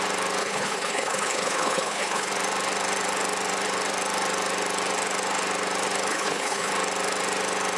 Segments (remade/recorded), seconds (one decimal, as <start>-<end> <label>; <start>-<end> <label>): 0.0-0.4 recorded; 0.4-2.3 remade; 2.3-6.1 recorded; 6.1-6.7 remade; 6.7-7.8 recorded